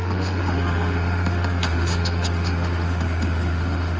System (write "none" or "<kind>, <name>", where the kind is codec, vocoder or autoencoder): autoencoder, DAC-VAE